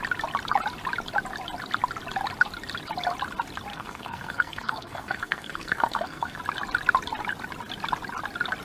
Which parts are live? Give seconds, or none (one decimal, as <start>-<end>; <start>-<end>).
0.0-3.7; 6.4-8.6